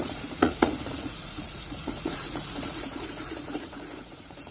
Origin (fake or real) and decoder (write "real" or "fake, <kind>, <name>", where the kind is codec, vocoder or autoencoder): fake, vocoder, Vocos